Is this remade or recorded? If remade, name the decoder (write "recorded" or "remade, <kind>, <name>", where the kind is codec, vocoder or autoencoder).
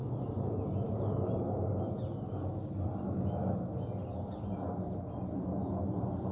recorded